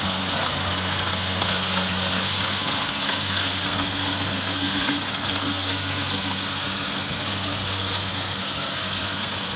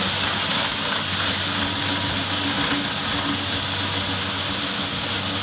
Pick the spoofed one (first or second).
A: first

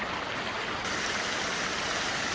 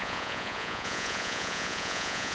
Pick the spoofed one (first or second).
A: second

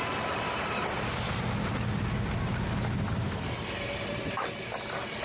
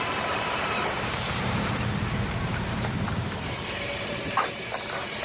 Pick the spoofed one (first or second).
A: second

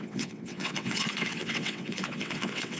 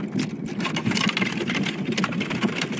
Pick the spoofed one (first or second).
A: first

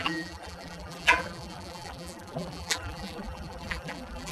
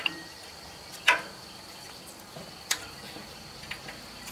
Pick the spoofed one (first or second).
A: first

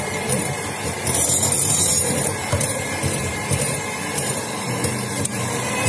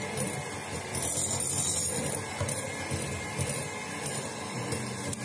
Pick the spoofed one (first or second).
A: first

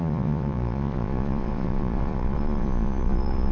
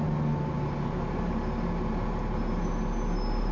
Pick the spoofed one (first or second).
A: first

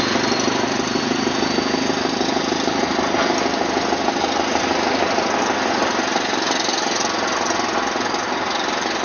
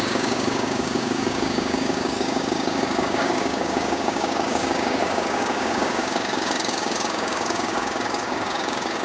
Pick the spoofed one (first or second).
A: second